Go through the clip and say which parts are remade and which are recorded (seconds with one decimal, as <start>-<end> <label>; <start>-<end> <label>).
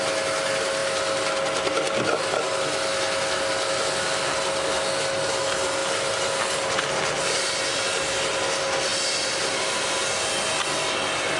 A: 0.0-11.4 recorded